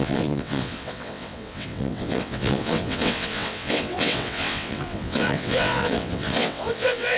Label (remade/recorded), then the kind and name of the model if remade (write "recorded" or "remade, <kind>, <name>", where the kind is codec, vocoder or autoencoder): remade, vocoder, WaveNeXt